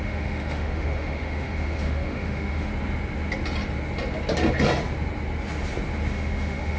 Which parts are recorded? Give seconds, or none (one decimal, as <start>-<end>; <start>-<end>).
2.7-6.1